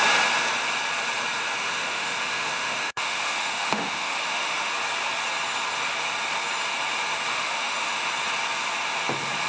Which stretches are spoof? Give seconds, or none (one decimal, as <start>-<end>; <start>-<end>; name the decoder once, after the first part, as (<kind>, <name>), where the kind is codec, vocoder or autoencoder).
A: 1.6-4.7 (autoencoder, DAC-VAE); 7.3-8.1